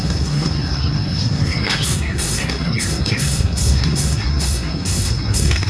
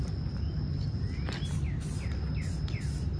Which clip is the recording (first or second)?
second